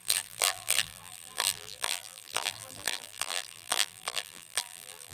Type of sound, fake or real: fake